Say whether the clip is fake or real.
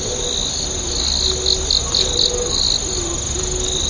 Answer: real